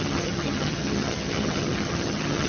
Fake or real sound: fake